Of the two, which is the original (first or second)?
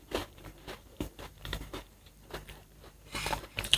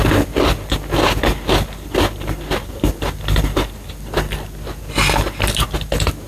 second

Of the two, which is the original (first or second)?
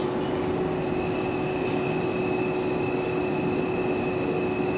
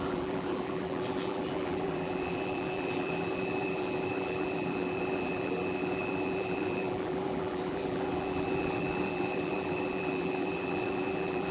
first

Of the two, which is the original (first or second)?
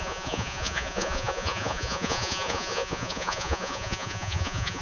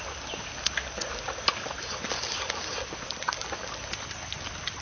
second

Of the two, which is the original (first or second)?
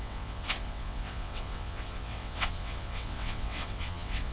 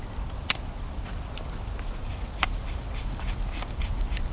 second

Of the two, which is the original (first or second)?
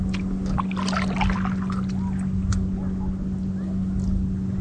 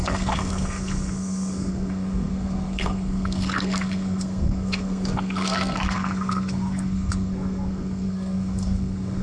first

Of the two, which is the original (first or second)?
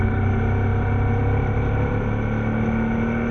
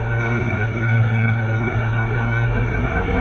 first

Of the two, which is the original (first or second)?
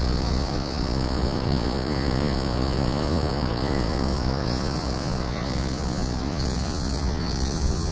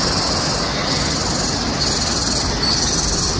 second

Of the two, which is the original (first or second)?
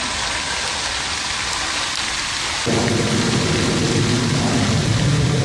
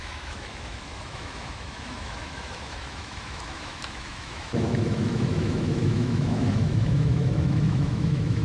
first